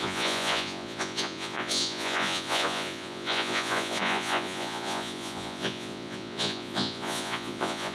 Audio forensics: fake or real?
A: fake